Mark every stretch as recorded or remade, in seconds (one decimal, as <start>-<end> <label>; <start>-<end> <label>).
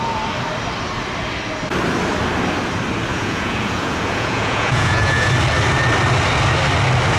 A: 0.0-3.1 recorded; 3.1-5.3 remade; 5.3-7.2 recorded